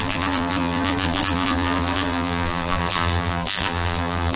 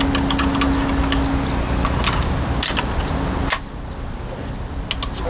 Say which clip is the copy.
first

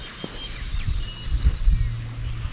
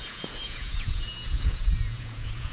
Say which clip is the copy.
second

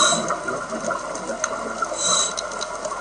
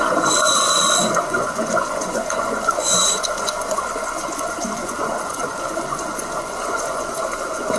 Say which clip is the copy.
second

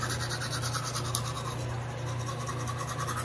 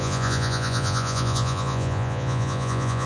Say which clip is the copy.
second